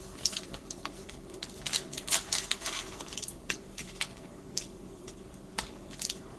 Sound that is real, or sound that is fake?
fake